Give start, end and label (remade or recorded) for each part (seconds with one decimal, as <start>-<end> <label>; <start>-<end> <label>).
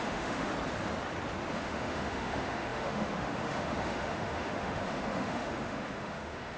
0.0-0.5 remade; 0.5-1.5 recorded; 1.5-6.6 remade